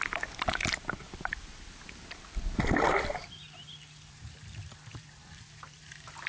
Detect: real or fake fake